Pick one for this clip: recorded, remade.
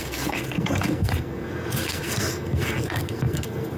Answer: remade